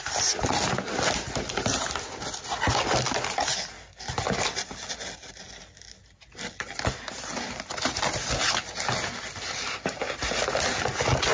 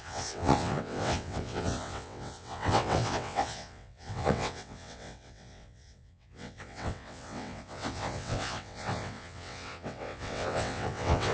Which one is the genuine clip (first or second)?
first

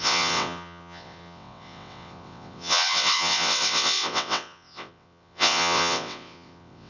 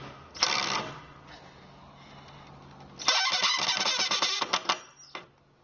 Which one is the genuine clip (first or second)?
second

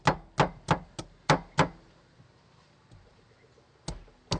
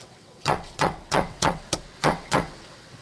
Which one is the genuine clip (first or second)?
first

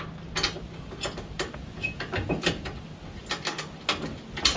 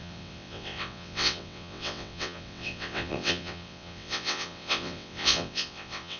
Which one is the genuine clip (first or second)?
first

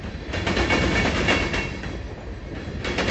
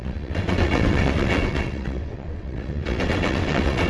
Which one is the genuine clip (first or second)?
first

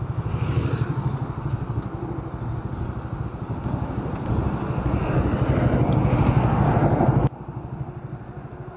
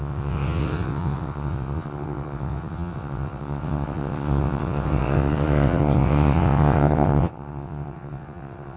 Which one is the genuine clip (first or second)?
first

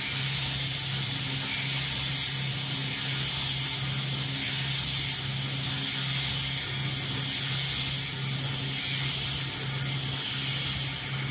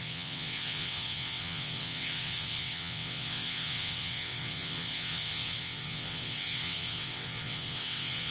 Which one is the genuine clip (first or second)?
first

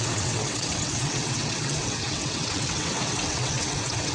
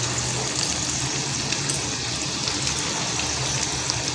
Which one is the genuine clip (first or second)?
second